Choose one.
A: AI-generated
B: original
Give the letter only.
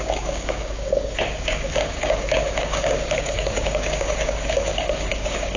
A